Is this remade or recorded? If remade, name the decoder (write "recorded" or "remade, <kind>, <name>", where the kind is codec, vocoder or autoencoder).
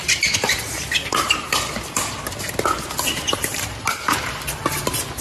recorded